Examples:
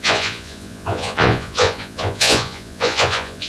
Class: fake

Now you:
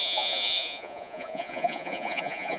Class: fake